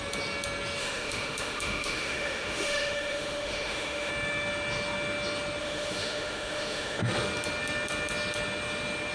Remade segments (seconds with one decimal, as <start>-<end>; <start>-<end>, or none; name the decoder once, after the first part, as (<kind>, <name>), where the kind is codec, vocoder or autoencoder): 0.8-4.1 (autoencoder, DAC-VAE); 5.6-7.0